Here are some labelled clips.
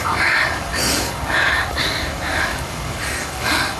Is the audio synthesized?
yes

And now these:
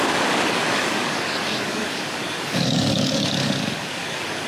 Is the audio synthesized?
yes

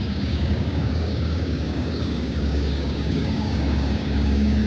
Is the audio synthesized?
yes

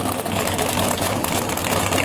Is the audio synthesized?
yes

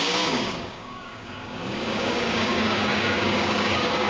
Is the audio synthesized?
yes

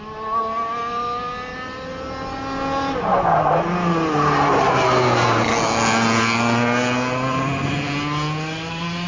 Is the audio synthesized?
no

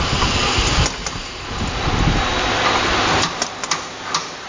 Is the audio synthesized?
no